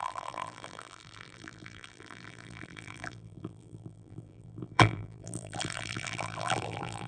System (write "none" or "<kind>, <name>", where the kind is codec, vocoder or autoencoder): vocoder, BigVGAN v2